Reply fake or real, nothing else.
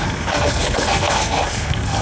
fake